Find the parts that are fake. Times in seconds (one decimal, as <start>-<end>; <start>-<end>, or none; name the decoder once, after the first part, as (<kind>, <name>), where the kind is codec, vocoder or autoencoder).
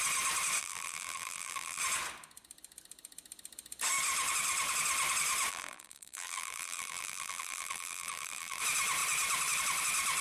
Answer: 0.6-1.8 (vocoder, BigVGAN v2); 5.5-8.6